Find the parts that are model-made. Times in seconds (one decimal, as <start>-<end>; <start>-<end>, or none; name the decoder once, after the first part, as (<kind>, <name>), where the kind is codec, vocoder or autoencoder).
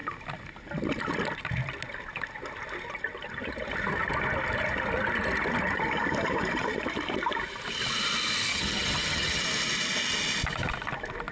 8.5-9.4 (vocoder, HiFi-GAN)